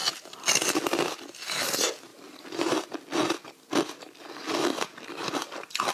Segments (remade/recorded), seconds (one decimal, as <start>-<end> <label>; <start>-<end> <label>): 0.0-5.9 recorded